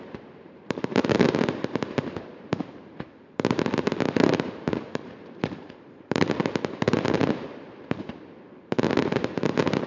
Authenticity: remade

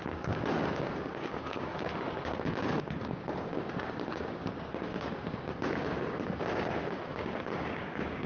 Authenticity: remade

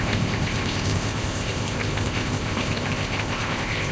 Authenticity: remade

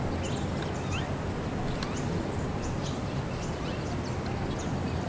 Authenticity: recorded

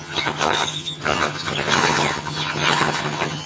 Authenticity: remade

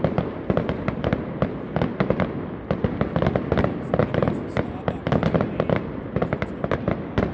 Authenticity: recorded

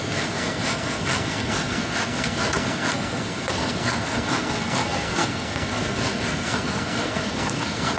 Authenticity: remade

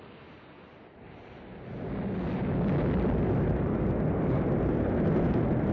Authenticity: recorded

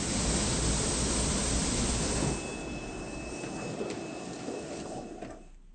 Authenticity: recorded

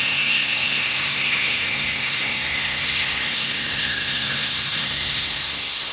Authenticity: remade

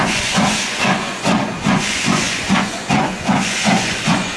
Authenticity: remade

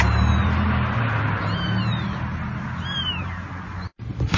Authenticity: recorded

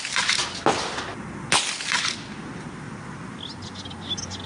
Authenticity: recorded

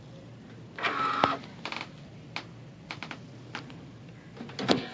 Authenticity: recorded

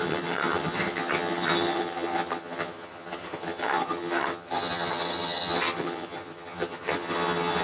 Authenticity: remade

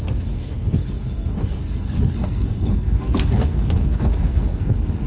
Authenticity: remade